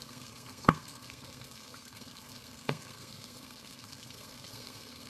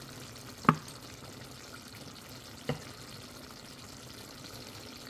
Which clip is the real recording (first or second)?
second